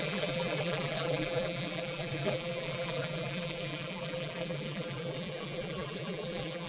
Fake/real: fake